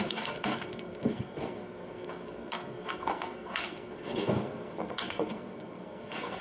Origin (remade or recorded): remade